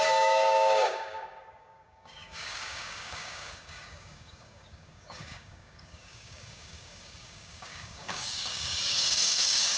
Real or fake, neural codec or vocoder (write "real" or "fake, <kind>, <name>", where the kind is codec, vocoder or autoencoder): fake, codec, DAC